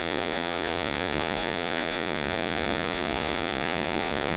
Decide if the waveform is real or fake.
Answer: fake